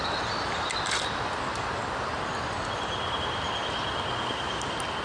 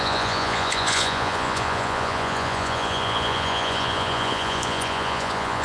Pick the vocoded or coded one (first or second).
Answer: second